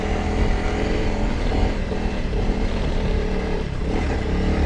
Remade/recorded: remade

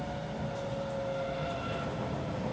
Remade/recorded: recorded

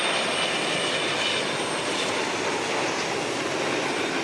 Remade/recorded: recorded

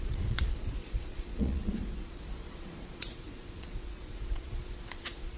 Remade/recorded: remade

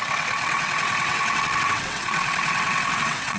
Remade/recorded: remade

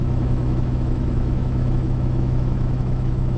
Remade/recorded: remade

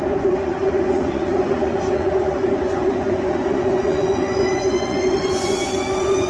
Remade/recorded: remade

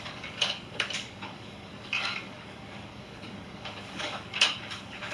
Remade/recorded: remade